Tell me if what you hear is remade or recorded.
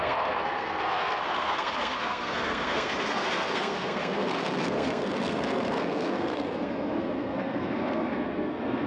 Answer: remade